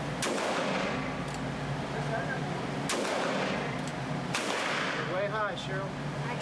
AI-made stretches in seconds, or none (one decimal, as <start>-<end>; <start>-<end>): none